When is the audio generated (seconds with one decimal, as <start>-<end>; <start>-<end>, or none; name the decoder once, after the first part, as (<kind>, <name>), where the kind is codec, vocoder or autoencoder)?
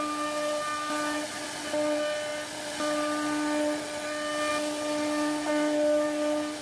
none